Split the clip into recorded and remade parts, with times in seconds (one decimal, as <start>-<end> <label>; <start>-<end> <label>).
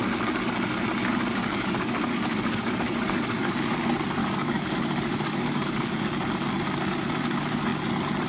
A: 0.0-1.4 recorded; 1.4-3.7 remade; 3.7-4.2 recorded; 4.2-5.9 remade; 5.9-8.3 recorded